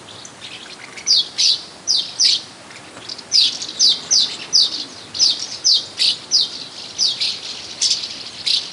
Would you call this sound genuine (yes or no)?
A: yes